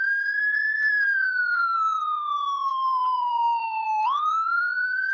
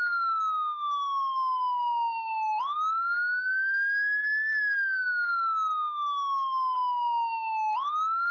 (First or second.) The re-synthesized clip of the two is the first